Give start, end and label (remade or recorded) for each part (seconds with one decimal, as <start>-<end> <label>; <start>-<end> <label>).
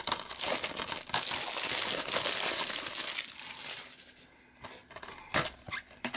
0.0-6.2 recorded